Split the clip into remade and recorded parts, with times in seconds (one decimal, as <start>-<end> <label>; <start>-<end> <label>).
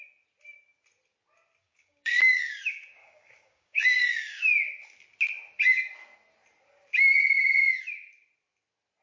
0.0-1.6 recorded; 1.6-2.6 remade; 2.6-3.0 recorded; 3.0-4.4 remade; 4.4-9.0 recorded